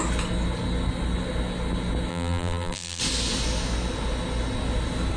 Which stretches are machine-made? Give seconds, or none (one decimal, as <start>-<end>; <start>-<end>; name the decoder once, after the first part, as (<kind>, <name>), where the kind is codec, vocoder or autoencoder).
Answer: 2.1-3.0 (vocoder, BigVGAN v2)